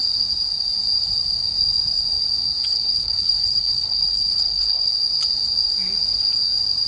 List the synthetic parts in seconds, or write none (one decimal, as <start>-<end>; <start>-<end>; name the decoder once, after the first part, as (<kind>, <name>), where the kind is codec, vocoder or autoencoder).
2.7-4.9 (codec, HILCodec)